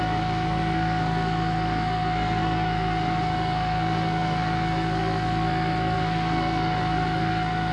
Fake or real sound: fake